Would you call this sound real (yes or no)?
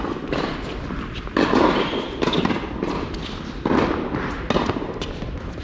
yes